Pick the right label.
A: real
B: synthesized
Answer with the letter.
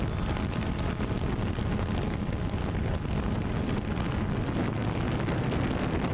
A